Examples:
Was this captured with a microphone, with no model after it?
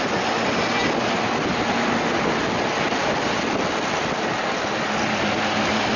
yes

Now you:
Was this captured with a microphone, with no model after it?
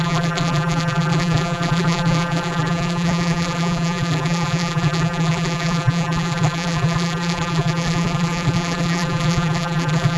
no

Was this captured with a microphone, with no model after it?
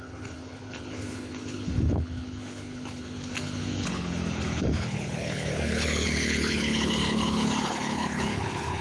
no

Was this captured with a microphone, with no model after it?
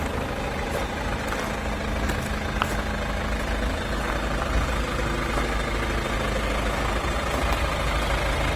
yes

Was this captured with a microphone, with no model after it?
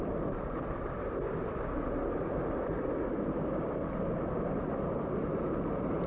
yes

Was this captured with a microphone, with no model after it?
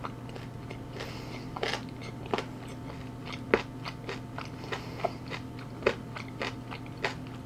yes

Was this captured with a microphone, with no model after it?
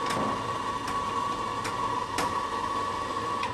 yes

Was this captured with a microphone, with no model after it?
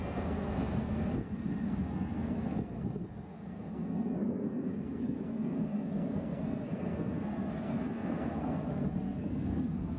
no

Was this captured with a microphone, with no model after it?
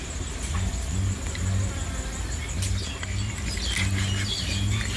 yes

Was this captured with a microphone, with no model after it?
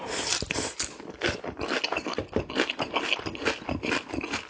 yes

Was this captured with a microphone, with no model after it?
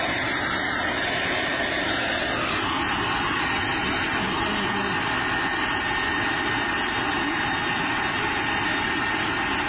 yes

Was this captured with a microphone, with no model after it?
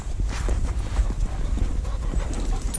yes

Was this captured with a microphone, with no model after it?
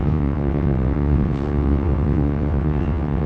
no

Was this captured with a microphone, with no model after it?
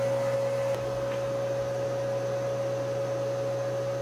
yes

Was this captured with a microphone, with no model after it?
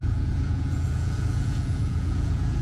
no